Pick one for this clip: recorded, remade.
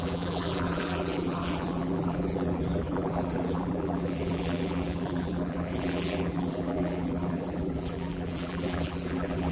remade